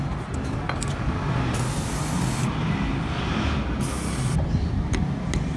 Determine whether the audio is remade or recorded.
recorded